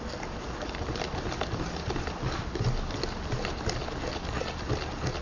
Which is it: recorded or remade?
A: recorded